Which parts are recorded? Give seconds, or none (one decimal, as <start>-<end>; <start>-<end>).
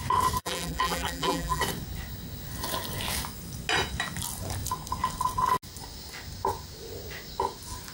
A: 0.0-0.4; 1.6-7.9